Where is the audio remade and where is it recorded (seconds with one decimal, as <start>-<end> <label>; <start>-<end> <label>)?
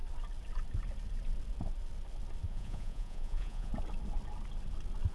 0.0-2.5 recorded; 2.5-3.7 remade; 3.7-5.1 recorded